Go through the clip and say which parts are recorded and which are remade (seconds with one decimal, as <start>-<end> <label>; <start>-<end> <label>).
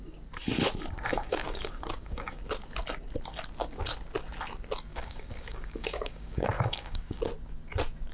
0.0-1.1 recorded; 1.1-2.4 remade; 2.4-4.9 recorded; 4.9-7.2 remade; 7.2-8.1 recorded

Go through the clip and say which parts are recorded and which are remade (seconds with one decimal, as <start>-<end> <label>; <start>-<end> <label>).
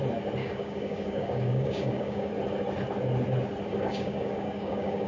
0.0-0.4 recorded; 0.4-2.3 remade; 2.3-3.7 recorded; 3.7-5.1 remade